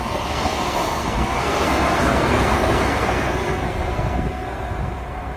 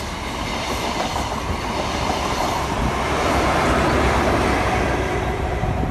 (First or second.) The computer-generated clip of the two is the first